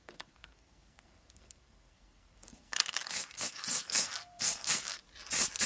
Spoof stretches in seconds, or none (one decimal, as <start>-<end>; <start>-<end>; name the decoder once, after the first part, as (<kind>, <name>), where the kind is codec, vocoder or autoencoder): 0.0-5.0 (codec, SNAC)

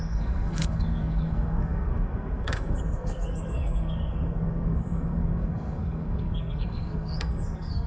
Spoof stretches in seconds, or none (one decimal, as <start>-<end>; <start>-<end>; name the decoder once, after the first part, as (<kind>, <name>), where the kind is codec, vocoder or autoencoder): 0.0-7.9 (codec, SNAC)

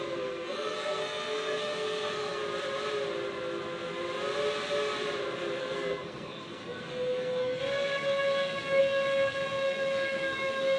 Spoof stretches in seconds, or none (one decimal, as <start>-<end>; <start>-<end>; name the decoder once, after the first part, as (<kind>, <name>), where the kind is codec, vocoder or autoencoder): 0.0-2.4 (codec, SNAC); 5.6-10.8

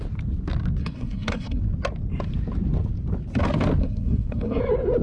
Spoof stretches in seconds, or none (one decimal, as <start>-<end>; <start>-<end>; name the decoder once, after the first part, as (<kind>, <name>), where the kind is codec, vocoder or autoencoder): 0.8-1.6 (codec, SNAC); 3.8-4.6

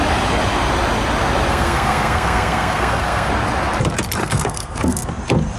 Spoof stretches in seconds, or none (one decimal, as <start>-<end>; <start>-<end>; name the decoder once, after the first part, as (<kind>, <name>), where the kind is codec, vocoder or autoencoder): 1.5-3.3 (codec, SNAC); 4.2-5.1

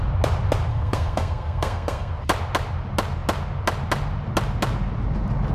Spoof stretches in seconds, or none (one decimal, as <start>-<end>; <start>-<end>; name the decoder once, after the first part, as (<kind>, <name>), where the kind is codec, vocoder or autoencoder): 0.7-2.1 (codec, SNAC)